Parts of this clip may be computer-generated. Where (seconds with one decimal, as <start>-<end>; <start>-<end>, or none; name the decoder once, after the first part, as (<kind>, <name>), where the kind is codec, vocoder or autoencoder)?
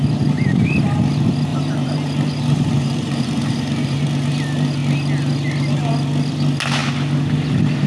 1.5-4.0 (vocoder, BigVGAN v2)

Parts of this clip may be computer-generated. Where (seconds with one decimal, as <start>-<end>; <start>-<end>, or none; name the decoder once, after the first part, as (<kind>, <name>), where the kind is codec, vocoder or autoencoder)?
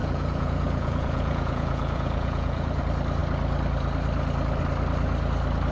0.0-2.8 (vocoder, Vocos)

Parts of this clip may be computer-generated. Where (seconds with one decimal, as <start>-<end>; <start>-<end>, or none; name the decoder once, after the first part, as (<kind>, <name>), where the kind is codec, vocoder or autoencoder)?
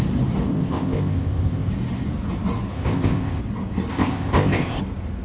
0.5-1.7 (codec, ZipCodec); 2.7-3.4; 3.9-4.8